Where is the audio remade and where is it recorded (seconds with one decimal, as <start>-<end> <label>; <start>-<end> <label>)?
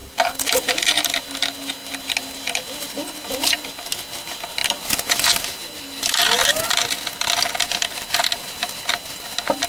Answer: 0.0-9.7 recorded